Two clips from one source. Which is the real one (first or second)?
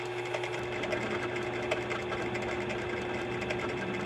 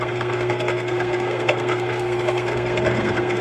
first